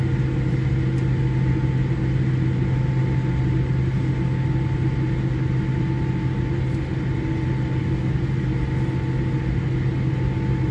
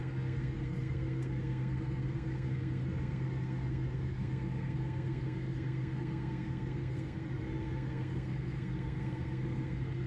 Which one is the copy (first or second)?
second